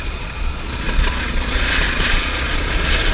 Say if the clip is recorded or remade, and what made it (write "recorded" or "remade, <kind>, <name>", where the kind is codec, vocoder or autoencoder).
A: remade, vocoder, Vocos